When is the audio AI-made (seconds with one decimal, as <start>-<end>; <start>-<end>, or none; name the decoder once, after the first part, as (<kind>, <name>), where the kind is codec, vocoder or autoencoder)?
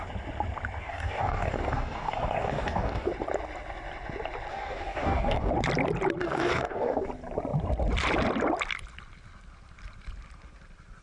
0.8-3.1 (codec, DAC); 4.5-5.5; 6.2-7.1